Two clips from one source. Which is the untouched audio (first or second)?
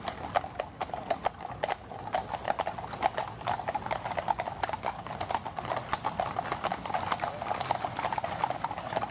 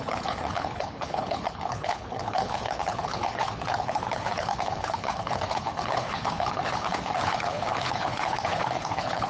first